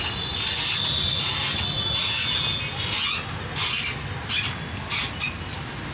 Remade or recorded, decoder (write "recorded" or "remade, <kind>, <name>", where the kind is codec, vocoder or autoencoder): recorded